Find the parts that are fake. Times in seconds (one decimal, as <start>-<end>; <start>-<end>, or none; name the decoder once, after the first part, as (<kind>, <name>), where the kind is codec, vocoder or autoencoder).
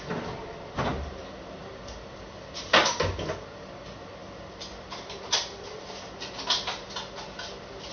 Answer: none